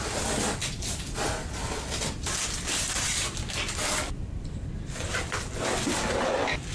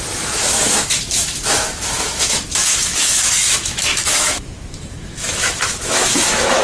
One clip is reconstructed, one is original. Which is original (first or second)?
first